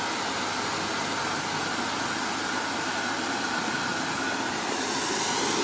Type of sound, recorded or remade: recorded